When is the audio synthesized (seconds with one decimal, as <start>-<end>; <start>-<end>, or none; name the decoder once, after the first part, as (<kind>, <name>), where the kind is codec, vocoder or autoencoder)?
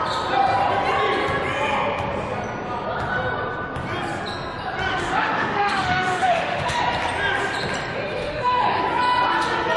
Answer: 4.9-6.8 (autoencoder, DAC-VAE); 8.2-8.8